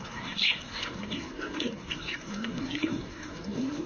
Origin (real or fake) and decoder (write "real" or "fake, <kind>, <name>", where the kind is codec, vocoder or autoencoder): fake, codec, SNAC